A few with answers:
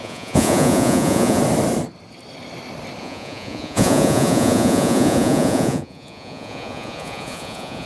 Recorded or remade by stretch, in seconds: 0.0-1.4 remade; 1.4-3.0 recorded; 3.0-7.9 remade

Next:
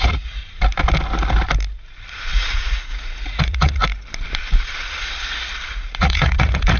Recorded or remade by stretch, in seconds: 0.0-0.4 remade; 0.4-2.3 recorded; 2.3-3.8 remade; 3.8-5.7 recorded; 5.7-6.8 remade

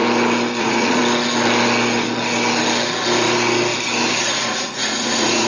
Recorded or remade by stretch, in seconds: 0.0-0.6 recorded; 0.6-1.0 remade; 1.0-4.2 recorded; 4.2-5.5 remade